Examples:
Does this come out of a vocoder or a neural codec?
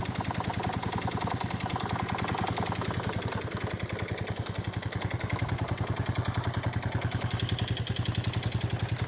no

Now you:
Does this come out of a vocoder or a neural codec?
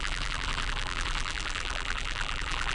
yes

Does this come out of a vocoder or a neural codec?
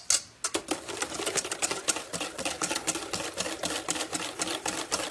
no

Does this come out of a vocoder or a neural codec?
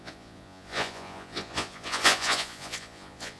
yes